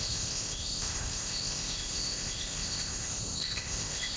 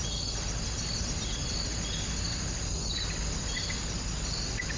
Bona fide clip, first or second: second